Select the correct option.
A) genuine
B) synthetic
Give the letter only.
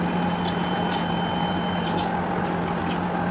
A